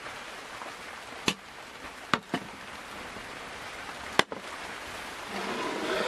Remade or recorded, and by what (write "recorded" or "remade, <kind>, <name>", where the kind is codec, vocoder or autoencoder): recorded